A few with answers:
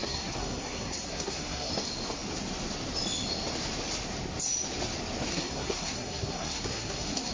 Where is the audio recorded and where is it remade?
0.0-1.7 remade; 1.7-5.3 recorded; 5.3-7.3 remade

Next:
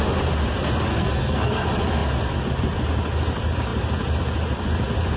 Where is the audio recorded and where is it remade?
0.0-0.9 recorded; 0.9-1.6 remade; 1.6-5.2 recorded

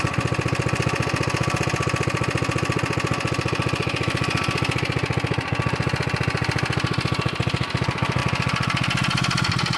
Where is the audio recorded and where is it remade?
0.0-9.8 recorded

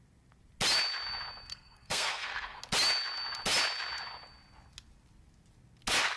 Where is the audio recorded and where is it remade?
0.0-1.5 recorded; 1.5-2.6 remade; 2.6-6.2 recorded

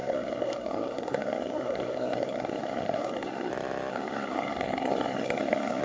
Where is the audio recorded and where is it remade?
0.0-3.5 remade; 3.5-3.9 recorded; 3.9-5.8 remade

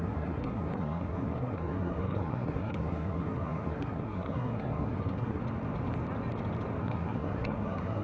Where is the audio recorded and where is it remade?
0.0-5.4 remade; 5.4-6.8 recorded; 6.8-8.0 remade